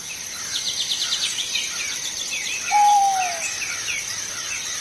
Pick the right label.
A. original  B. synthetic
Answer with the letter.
A